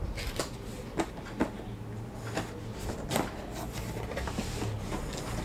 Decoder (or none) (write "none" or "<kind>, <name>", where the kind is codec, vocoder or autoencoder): none